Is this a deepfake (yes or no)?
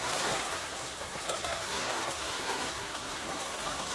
yes